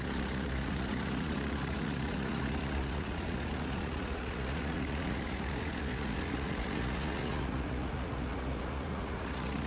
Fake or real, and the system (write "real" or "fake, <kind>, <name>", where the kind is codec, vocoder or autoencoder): fake, vocoder, Vocos